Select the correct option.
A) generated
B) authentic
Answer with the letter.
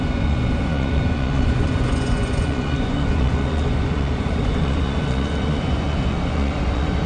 A